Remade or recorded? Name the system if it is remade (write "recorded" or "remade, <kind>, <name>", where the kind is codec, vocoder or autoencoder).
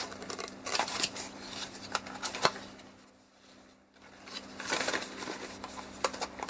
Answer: remade, vocoder, BigVGAN v2